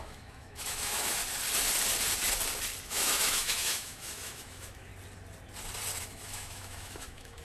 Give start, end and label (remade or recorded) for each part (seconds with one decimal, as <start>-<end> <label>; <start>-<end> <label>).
0.0-1.2 remade; 1.2-2.8 recorded; 2.8-4.9 remade; 4.9-6.0 recorded; 6.0-7.4 remade